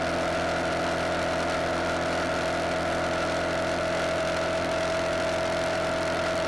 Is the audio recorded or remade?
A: recorded